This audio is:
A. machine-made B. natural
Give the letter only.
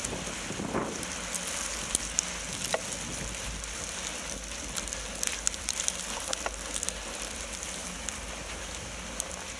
B